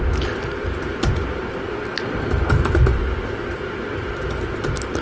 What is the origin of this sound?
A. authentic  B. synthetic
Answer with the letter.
A